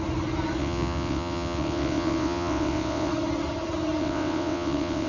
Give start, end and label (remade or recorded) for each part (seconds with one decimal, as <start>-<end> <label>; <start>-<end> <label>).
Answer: 0.0-0.6 recorded; 0.6-3.1 remade; 3.1-4.0 recorded; 4.0-5.1 remade